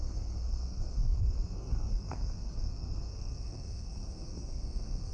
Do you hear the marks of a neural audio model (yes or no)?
yes